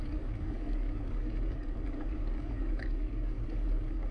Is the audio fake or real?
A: fake